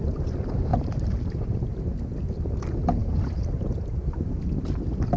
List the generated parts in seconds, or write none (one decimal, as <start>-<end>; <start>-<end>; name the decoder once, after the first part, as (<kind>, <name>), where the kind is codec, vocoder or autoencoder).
0.7-1.8 (vocoder, BigVGAN v2)